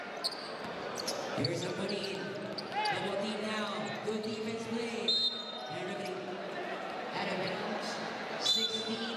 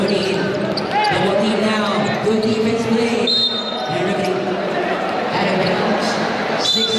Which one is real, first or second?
first